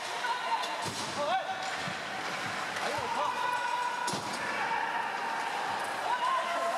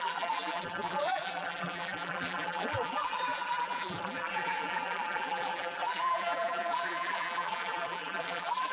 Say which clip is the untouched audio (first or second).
first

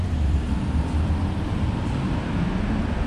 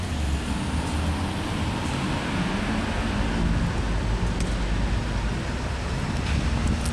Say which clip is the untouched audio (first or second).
second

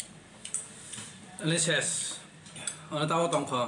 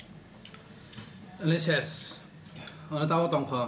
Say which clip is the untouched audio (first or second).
second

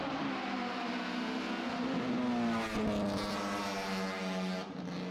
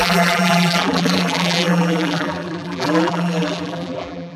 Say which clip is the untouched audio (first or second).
first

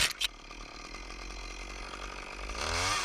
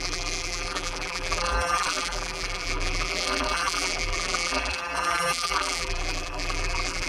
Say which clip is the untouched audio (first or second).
first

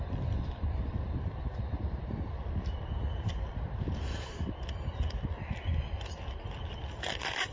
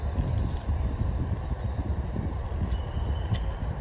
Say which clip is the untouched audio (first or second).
second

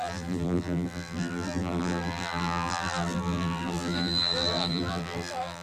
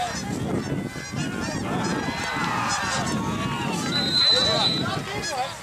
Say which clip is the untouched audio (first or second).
second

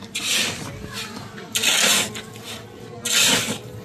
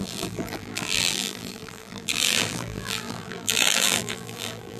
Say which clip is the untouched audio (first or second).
first